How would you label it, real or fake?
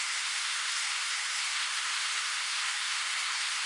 fake